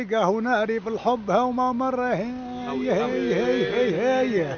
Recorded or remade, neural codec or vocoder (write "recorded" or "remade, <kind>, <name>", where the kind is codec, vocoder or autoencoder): recorded